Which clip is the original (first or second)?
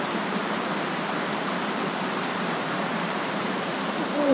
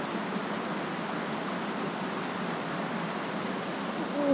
second